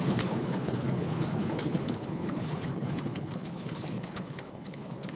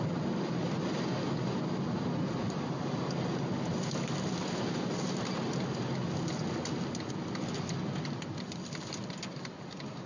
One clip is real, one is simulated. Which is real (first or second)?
second